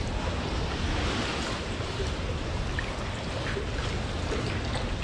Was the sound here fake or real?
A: real